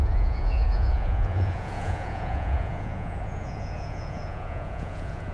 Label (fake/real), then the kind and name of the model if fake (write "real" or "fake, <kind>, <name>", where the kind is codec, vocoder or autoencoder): fake, vocoder, Vocos